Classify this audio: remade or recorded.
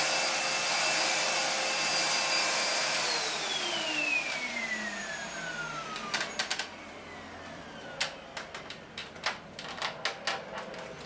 recorded